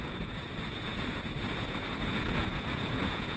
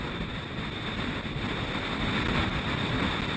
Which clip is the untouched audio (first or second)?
second